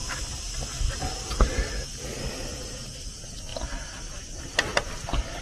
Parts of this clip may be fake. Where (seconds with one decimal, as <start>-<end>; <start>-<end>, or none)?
3.5-4.4